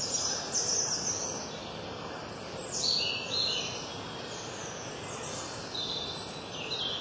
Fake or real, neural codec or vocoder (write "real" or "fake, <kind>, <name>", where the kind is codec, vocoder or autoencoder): real